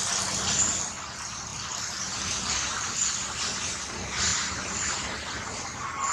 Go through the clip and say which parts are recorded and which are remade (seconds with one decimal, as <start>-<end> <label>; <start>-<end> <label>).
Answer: 0.0-4.3 recorded; 4.3-5.6 remade; 5.6-6.1 recorded